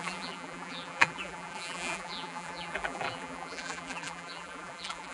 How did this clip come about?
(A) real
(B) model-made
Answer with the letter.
B